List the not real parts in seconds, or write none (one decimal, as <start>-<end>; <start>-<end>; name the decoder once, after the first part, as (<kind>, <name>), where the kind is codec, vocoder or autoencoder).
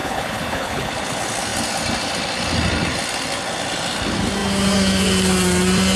0.0-0.9 (codec, HILCodec)